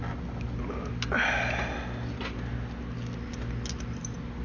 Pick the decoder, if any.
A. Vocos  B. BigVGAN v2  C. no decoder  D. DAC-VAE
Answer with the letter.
C